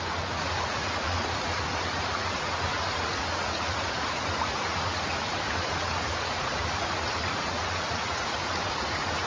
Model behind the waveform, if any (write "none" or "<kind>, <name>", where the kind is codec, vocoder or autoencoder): vocoder, Vocos